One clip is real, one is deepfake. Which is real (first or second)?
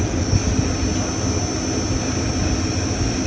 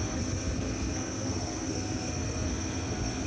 first